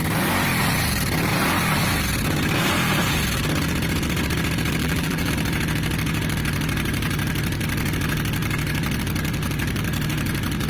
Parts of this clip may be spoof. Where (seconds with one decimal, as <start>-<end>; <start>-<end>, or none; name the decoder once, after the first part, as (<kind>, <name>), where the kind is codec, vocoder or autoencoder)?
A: 4.8-5.3 (vocoder, BigVGAN v2)